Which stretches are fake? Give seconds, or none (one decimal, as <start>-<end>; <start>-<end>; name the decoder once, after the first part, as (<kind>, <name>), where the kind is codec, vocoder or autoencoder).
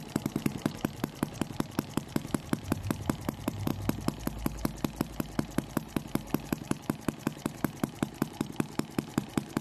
0.0-3.7 (vocoder, BigVGAN v2); 5.0-9.6